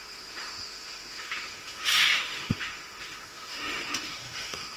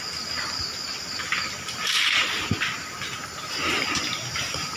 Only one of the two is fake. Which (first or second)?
first